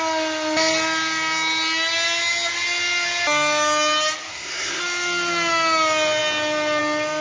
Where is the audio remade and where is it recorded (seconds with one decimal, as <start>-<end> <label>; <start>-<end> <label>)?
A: 0.0-4.3 recorded; 4.3-4.8 remade; 4.8-7.2 recorded